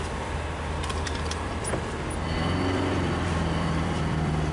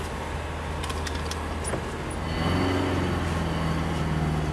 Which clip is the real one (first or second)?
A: second